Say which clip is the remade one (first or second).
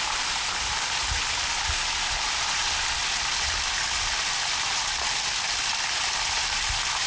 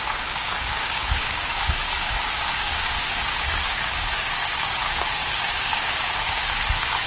second